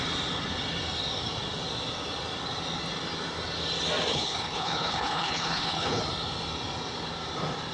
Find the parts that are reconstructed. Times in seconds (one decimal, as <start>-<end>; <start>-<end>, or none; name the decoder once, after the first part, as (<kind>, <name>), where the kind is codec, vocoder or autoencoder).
4.1-6.0 (codec, HILCodec)